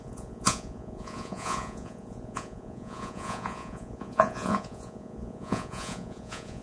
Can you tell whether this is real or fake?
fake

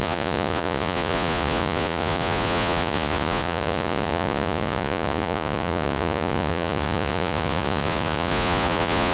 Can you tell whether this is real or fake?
fake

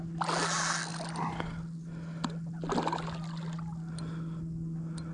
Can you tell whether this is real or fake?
real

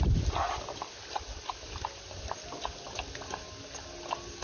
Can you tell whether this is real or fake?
real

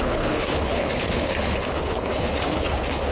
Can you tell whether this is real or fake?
fake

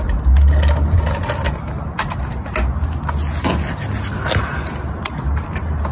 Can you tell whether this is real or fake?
real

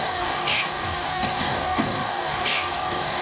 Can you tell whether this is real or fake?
fake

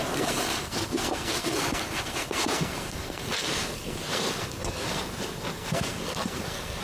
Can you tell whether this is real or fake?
fake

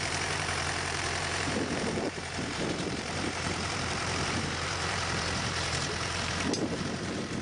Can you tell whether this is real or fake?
fake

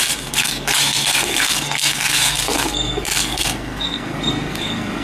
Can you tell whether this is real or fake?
fake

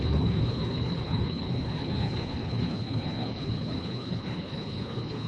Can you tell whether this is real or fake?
fake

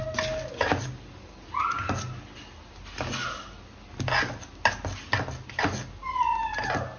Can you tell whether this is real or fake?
real